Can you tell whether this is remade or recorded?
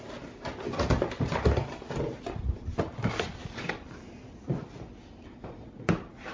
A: recorded